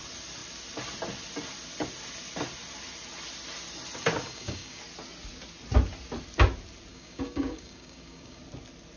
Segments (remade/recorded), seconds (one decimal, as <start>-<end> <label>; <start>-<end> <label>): 0.0-4.2 recorded; 4.2-4.8 remade; 4.8-6.9 recorded; 6.9-8.4 remade; 8.4-9.0 recorded